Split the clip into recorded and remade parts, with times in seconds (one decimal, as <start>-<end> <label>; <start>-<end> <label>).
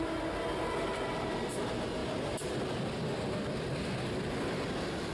0.0-5.1 recorded